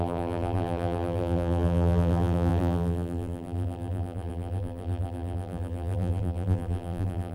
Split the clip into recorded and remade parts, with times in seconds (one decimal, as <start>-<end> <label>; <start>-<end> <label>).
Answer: 0.0-7.3 remade